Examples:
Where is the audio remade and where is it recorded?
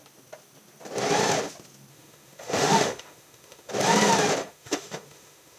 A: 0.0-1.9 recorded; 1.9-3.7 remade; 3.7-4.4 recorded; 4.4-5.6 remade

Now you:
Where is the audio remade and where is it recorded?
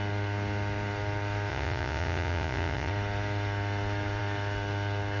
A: 0.0-1.5 recorded; 1.5-2.9 remade; 2.9-5.2 recorded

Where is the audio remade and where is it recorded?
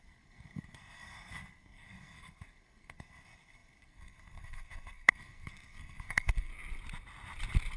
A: 0.0-6.5 remade; 6.5-7.8 recorded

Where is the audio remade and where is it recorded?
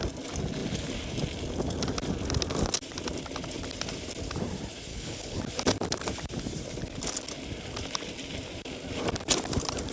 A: 0.0-4.9 recorded; 4.9-5.4 remade; 5.4-9.9 recorded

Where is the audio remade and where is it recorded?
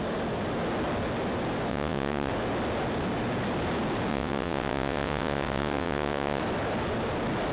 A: 0.0-1.7 recorded; 1.7-2.3 remade; 2.3-4.1 recorded; 4.1-6.4 remade; 6.4-7.5 recorded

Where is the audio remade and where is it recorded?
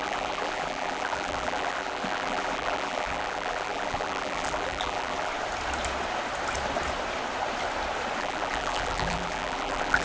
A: 0.0-5.3 remade; 5.3-8.2 recorded; 8.2-10.0 remade